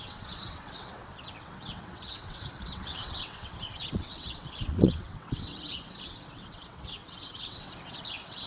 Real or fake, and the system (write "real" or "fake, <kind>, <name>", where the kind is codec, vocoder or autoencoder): fake, vocoder, WaveNeXt